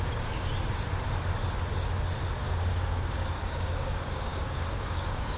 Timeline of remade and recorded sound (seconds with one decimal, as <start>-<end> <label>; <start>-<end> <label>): 0.0-0.5 remade; 0.5-2.4 recorded; 2.4-5.4 remade